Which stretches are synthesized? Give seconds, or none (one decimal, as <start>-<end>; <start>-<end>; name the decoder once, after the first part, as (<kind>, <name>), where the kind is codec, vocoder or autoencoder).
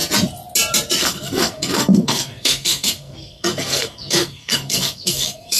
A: 1.0-5.6 (codec, SNAC)